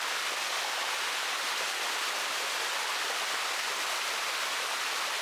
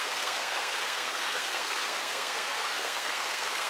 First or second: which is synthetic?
second